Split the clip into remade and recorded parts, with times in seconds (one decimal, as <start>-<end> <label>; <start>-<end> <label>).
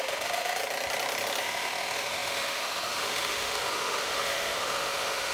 0.0-0.6 remade; 0.6-1.4 recorded; 1.4-5.3 remade